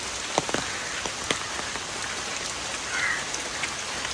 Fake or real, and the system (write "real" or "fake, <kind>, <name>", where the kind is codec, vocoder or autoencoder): real